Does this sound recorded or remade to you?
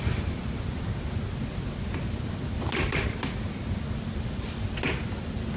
recorded